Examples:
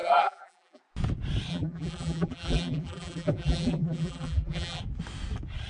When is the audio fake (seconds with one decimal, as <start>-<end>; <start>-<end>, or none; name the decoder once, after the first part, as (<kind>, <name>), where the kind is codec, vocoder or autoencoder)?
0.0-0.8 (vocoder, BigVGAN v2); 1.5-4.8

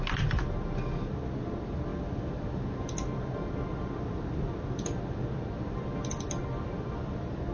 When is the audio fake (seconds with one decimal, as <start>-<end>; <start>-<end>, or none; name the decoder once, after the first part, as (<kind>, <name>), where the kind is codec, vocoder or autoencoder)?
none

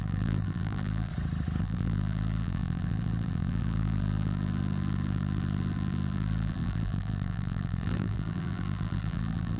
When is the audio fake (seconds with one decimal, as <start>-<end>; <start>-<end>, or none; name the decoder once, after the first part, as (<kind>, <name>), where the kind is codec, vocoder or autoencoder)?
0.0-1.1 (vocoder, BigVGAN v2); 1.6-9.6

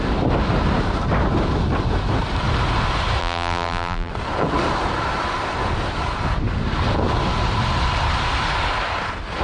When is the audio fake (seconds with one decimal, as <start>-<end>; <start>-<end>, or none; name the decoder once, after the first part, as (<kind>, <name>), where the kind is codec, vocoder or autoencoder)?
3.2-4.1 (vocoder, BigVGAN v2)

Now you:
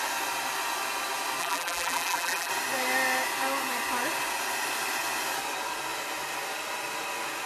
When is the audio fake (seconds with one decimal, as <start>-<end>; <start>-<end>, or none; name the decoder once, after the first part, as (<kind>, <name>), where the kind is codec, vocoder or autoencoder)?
1.4-2.5 (vocoder, BigVGAN v2)